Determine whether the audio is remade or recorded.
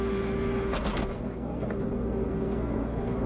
remade